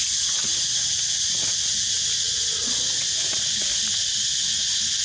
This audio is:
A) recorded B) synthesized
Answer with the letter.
A